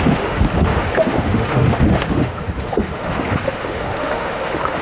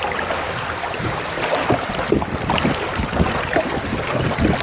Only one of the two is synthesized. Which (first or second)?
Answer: first